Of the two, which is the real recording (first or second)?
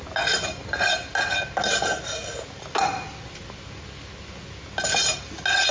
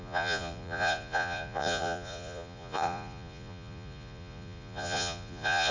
first